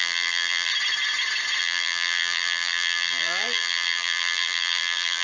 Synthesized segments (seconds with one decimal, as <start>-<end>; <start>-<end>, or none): 0.0-0.7; 1.6-5.2